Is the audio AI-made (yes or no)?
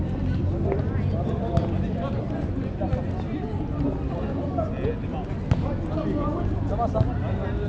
no